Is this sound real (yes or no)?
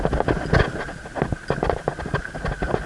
yes